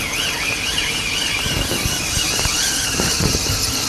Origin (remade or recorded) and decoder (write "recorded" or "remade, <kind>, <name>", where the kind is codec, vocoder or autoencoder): recorded